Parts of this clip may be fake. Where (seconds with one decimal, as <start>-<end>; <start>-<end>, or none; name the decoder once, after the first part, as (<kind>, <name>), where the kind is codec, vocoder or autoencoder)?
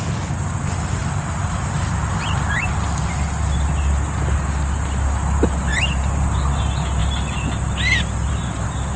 1.0-1.9 (vocoder, BigVGAN v2); 5.7-6.4